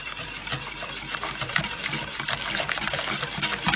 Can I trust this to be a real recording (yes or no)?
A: yes